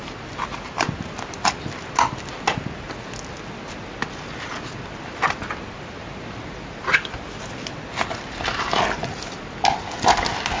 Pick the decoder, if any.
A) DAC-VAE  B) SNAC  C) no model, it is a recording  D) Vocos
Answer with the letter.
C